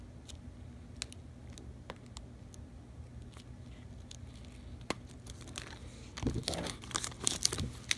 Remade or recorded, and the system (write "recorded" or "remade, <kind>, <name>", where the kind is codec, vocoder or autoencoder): recorded